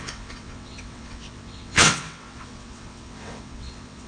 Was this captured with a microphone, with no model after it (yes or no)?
no